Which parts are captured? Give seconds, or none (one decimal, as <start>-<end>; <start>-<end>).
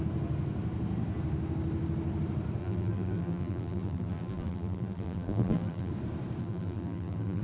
0.0-2.6; 5.9-6.4